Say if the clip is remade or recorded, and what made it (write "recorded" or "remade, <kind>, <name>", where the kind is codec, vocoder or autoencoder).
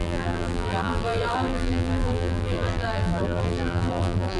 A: remade, vocoder, BigVGAN v2